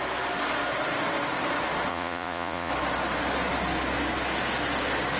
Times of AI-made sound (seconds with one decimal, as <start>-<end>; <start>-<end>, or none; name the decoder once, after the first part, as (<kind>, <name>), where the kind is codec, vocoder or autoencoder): 1.9-2.7 (vocoder, Vocos)